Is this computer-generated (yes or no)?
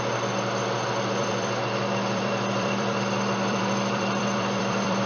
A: yes